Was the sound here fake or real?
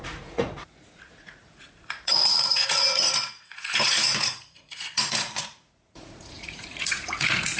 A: fake